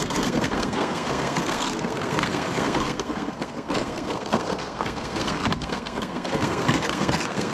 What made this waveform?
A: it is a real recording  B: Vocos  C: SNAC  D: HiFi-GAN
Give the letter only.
C